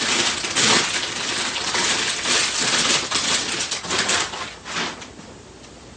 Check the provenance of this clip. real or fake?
real